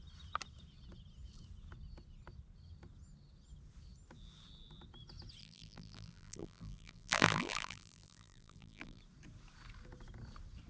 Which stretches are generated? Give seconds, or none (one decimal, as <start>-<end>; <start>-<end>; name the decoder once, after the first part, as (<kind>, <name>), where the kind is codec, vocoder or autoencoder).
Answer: 5.4-9.0 (vocoder, BigVGAN v2)